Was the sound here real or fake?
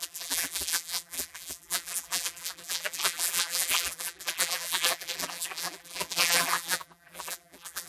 fake